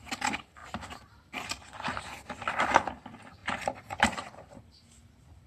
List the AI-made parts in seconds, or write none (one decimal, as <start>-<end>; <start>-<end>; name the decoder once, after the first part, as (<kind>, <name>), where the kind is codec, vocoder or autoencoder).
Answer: 3.4-4.5 (vocoder, BigVGAN v2)